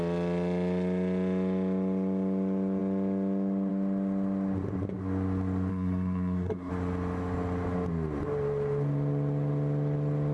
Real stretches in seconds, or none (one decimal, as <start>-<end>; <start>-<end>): 0.0-5.7; 6.7-10.3